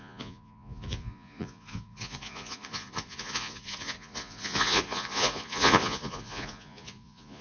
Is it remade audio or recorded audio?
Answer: remade